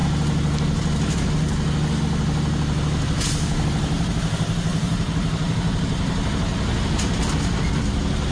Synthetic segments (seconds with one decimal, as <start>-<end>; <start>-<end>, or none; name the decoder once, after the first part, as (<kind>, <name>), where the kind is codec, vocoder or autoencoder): 4.7-7.1 (vocoder, BigVGAN v2)